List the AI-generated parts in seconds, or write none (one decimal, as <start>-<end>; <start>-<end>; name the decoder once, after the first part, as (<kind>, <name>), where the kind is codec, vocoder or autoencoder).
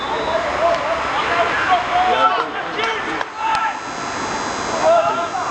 none